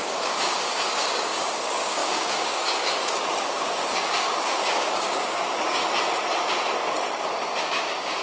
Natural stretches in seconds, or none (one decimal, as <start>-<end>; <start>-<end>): 5.8-7.6